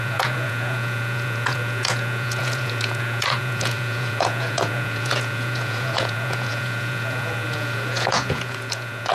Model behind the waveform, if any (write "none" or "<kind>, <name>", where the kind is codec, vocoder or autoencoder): vocoder, Vocos